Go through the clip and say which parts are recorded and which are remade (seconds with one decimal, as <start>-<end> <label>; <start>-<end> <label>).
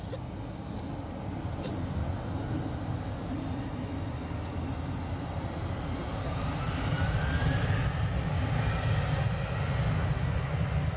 0.0-11.0 recorded